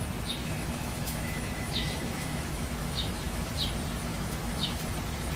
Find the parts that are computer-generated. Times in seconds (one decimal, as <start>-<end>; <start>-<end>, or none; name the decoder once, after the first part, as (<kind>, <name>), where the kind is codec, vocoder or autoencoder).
0.4-3.5 (autoencoder, DAC-VAE); 4.1-4.8